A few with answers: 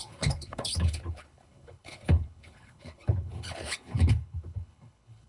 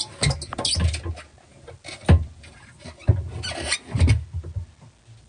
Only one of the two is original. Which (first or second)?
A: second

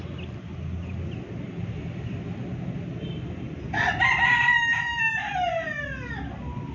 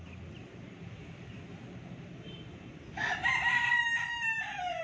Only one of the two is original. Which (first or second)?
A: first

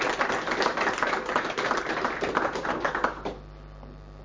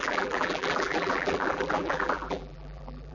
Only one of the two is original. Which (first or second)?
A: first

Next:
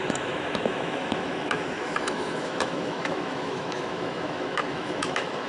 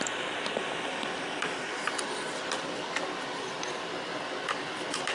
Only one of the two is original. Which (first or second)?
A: second